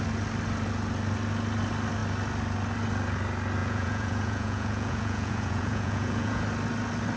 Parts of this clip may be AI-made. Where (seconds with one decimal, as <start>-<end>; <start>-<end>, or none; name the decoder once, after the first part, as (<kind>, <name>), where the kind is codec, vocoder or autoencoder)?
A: 3.6-6.4 (vocoder, Vocos)